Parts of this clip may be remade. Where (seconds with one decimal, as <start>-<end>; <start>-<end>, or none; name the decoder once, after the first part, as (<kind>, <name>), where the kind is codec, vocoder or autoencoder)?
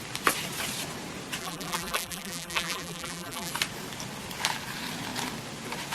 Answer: 1.4-3.5 (vocoder, BigVGAN v2)